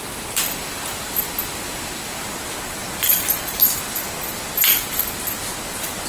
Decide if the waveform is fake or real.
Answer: real